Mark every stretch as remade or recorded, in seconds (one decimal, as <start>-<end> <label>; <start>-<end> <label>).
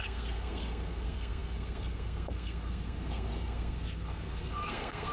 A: 0.0-5.1 remade